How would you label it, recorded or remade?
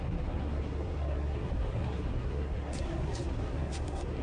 remade